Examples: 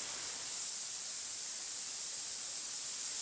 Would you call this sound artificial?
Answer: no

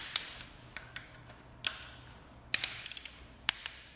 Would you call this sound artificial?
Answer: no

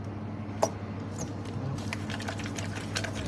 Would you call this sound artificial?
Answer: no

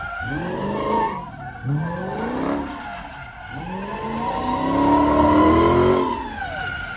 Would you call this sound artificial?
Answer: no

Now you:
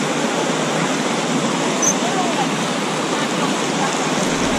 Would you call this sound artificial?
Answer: no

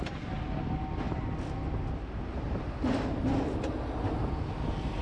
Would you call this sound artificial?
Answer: no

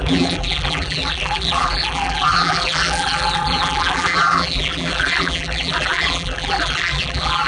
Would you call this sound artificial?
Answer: yes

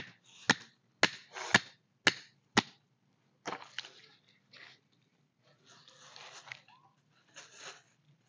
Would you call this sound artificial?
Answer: no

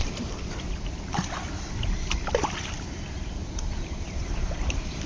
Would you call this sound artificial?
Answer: yes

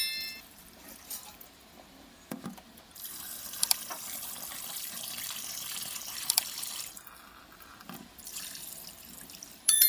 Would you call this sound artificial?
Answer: yes